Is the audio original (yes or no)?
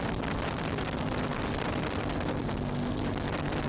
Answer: no